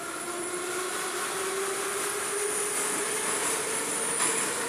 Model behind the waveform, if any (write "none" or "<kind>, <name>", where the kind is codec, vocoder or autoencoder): none